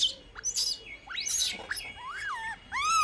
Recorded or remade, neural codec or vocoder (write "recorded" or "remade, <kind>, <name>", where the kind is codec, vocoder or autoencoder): recorded